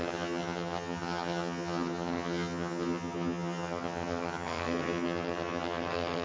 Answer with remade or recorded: remade